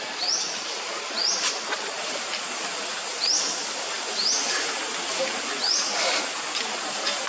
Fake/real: real